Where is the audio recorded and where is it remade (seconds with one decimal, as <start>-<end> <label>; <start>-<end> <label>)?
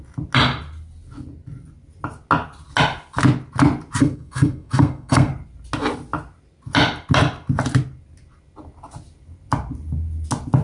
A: 0.0-4.0 recorded; 4.0-5.3 remade; 5.3-10.6 recorded